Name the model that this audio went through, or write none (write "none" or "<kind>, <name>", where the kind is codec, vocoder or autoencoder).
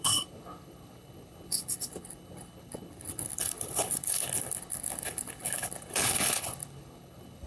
codec, HILCodec